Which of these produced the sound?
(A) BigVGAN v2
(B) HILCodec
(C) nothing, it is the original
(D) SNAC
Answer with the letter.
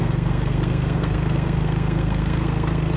D